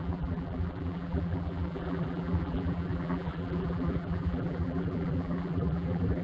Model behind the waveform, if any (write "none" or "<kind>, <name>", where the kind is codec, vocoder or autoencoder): vocoder, BigVGAN v2